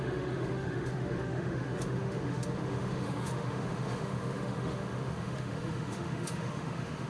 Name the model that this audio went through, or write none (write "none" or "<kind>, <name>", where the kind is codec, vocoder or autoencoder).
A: autoencoder, DAC-VAE